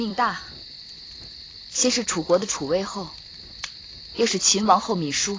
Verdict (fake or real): fake